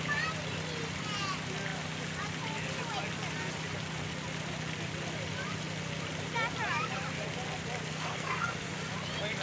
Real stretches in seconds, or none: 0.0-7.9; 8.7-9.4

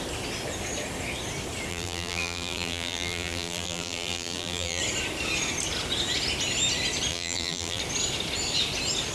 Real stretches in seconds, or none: 0.0-1.7; 4.8-7.1; 7.8-9.1

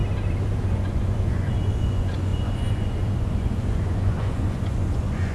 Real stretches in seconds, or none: 0.0-0.7

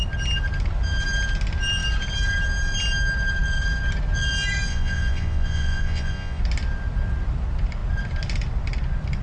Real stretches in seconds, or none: 0.0-4.7; 6.4-9.2

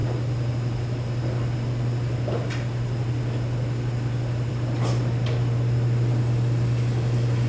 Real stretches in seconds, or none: 0.0-7.5

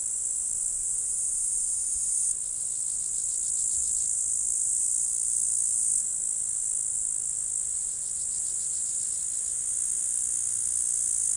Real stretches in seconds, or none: 0.0-0.8; 2.3-11.4